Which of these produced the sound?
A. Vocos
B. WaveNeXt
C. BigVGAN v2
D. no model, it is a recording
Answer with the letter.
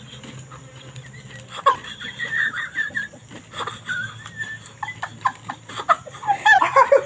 D